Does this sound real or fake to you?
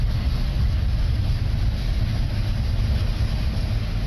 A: real